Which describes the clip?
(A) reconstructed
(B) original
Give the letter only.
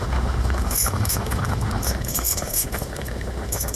A